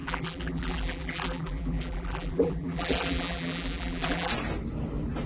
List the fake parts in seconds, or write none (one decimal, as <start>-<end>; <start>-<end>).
0.0-4.3